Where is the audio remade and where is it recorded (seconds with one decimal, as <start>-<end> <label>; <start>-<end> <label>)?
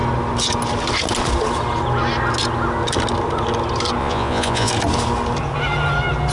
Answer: 0.0-4.0 recorded; 4.0-4.7 remade; 4.7-6.3 recorded